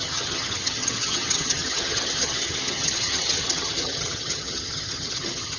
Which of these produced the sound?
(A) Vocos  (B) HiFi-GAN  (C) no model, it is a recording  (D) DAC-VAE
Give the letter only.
B